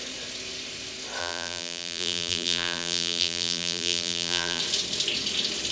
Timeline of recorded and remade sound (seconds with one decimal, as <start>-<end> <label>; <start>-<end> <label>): 0.0-1.2 recorded; 1.2-4.6 remade; 4.6-5.7 recorded